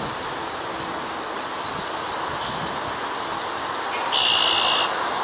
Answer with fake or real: real